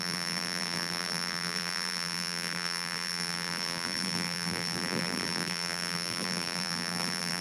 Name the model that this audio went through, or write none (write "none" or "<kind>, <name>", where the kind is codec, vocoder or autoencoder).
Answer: vocoder, BigVGAN v2